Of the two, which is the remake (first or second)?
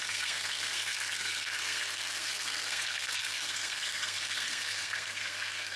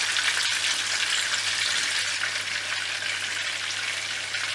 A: first